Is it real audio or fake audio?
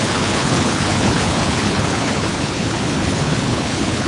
fake